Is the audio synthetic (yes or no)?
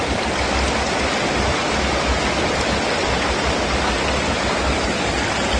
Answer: no